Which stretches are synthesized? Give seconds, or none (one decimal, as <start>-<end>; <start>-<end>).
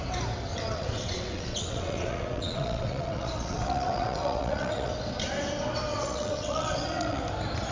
0.5-4.9; 5.9-7.2